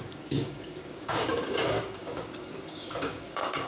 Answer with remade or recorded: remade